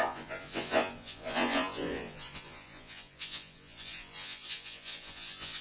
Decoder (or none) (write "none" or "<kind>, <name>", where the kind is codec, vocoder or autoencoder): vocoder, Vocos